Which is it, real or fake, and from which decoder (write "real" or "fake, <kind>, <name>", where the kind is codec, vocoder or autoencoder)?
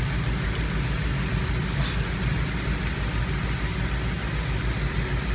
real